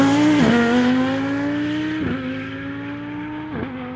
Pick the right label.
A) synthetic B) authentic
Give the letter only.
B